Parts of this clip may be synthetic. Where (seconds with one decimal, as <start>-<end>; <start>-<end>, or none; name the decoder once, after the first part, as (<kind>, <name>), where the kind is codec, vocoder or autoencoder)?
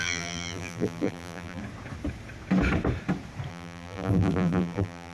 0.0-1.6 (vocoder, BigVGAN v2); 3.5-5.1